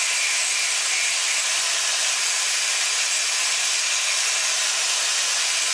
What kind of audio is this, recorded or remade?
recorded